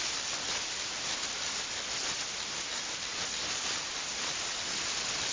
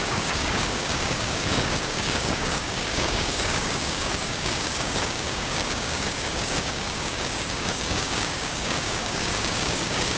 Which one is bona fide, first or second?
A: first